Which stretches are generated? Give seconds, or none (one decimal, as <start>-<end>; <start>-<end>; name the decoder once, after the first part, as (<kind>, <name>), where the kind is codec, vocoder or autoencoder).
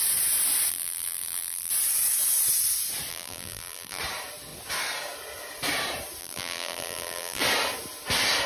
0.7-1.7 (vocoder, BigVGAN v2); 3.1-4.0; 6.2-7.4